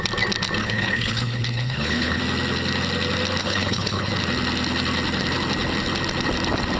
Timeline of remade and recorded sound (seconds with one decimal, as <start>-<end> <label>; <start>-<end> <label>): 0.0-0.6 recorded; 0.6-2.2 remade; 2.2-3.4 recorded; 3.4-4.1 remade; 4.1-6.8 recorded